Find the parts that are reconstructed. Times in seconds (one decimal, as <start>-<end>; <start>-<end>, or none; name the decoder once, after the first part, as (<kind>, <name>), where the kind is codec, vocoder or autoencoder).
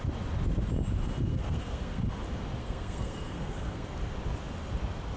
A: 1.3-2.0 (codec, SNAC); 2.6-3.9